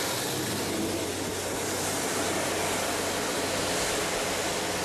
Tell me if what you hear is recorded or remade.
recorded